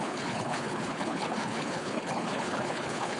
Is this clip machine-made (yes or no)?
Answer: yes